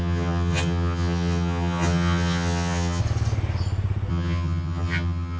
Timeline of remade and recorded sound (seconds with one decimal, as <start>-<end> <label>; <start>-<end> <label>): 0.0-3.0 remade; 3.0-4.1 recorded; 4.1-5.4 remade